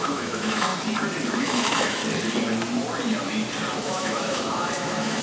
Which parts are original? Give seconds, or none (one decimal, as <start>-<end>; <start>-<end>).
0.7-1.4; 2.0-3.8